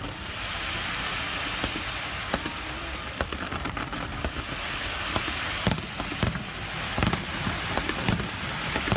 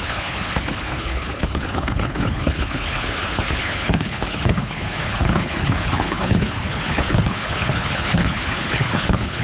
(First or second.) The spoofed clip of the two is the second